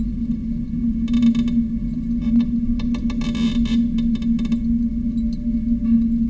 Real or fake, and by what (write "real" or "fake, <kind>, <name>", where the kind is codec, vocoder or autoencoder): real